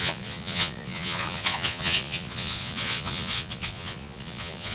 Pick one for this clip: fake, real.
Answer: fake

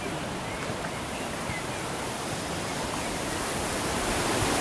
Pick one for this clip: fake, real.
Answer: real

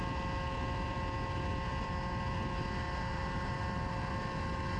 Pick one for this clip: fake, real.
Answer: real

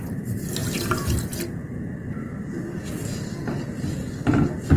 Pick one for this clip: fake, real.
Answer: real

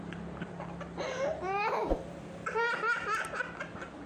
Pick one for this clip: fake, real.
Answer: real